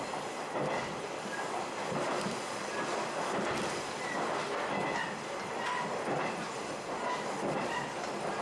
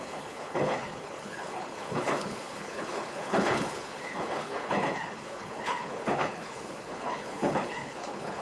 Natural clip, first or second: first